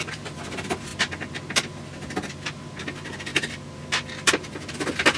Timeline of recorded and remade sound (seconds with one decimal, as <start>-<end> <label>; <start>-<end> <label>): 0.0-0.9 remade; 0.9-2.8 recorded; 2.8-3.3 remade; 3.3-4.7 recorded; 4.7-5.2 remade